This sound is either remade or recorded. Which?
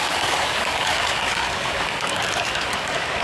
remade